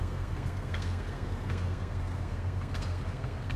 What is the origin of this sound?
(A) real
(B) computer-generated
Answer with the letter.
B